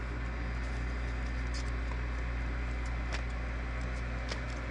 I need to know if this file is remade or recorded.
recorded